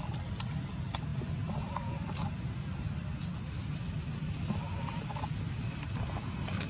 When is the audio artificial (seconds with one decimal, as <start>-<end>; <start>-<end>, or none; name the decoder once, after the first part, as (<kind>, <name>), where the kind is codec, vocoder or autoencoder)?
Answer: none